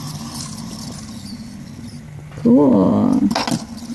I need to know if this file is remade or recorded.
recorded